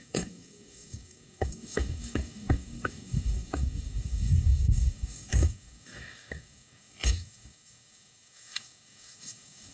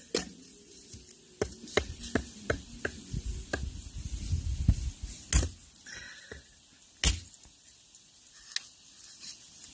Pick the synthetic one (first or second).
first